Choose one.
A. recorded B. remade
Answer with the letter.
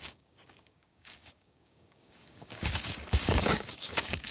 B